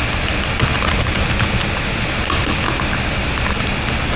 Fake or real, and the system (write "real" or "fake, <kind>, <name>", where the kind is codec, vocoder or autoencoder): real